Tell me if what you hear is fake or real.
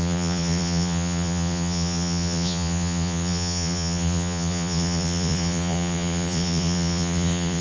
fake